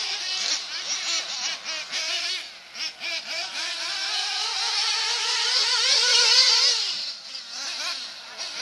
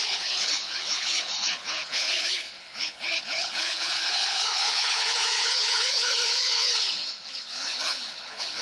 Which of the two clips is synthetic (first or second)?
second